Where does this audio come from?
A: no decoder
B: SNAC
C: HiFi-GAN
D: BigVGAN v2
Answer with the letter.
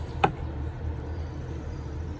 A